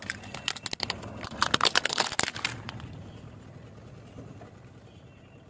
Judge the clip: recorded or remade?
recorded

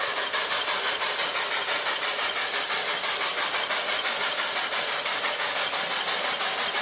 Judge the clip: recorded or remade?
recorded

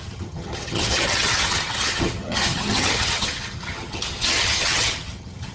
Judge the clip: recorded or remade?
remade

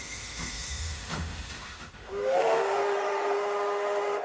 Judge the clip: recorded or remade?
remade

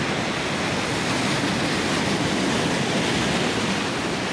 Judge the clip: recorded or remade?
recorded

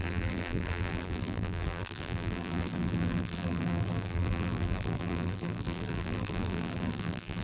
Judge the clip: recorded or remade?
remade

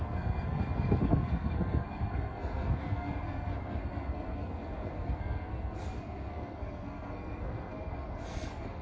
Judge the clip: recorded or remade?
remade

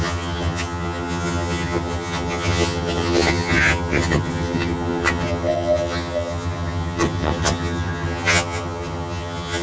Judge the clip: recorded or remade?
remade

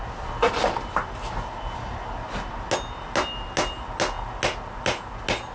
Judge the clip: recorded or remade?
recorded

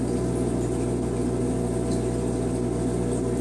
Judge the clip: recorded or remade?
recorded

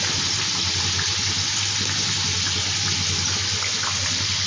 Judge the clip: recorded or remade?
recorded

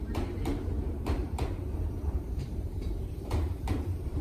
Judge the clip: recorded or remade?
remade